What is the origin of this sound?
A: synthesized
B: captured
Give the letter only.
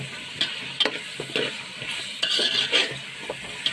B